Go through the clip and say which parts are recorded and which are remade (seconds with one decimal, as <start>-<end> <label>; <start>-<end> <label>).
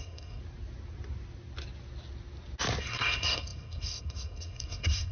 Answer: 0.0-0.4 remade; 0.4-2.8 recorded; 2.8-5.1 remade